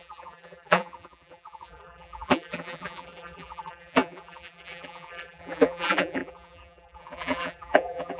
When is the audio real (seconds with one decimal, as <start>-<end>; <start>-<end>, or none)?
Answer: none